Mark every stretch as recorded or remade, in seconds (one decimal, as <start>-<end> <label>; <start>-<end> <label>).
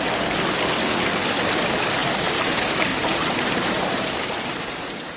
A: 0.0-2.0 recorded; 2.0-2.5 remade; 2.5-2.9 recorded; 2.9-5.2 remade